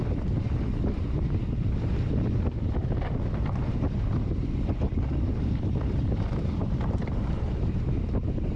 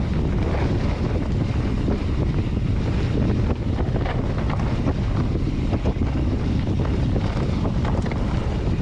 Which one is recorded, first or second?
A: second